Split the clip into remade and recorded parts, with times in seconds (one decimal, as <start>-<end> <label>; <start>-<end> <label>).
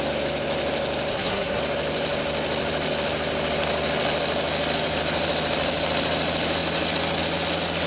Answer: 0.0-1.1 recorded; 1.1-1.6 remade; 1.6-7.9 recorded